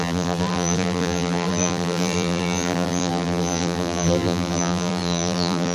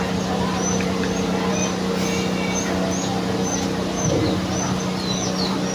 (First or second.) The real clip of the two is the second